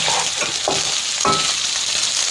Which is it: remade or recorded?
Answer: recorded